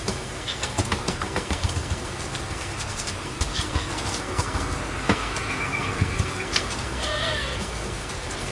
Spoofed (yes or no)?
yes